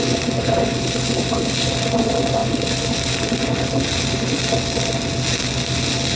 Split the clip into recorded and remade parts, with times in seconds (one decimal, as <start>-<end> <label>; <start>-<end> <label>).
0.0-6.2 recorded